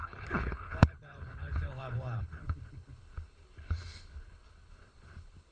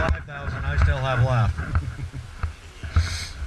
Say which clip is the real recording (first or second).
second